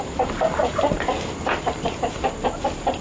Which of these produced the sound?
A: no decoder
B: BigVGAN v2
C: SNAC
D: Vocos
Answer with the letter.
A